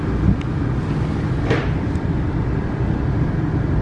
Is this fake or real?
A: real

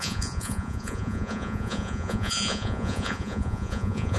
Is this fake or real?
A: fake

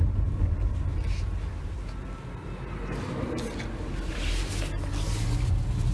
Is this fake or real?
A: real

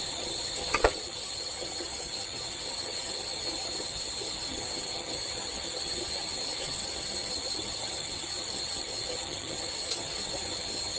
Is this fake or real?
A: fake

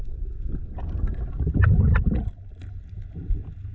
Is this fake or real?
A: real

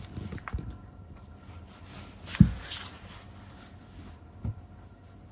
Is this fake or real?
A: real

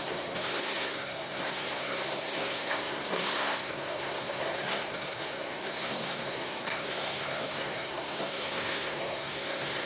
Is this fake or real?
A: fake